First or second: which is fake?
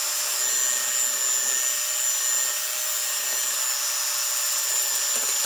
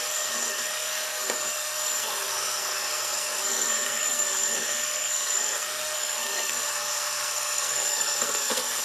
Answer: second